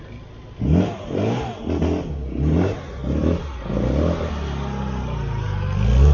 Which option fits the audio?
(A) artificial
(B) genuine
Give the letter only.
B